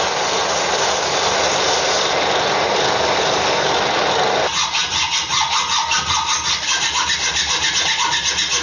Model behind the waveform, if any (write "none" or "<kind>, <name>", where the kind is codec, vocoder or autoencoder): none